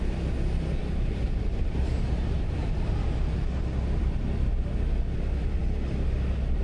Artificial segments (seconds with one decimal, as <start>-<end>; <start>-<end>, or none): 0.8-2.0